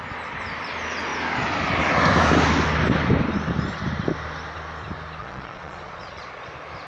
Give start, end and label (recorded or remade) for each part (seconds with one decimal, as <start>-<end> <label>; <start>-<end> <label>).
0.0-5.2 recorded; 5.2-6.5 remade; 6.5-6.9 recorded